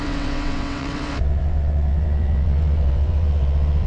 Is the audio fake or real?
fake